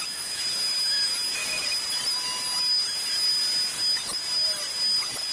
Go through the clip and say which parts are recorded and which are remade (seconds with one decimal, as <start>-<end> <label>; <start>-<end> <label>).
0.0-5.3 recorded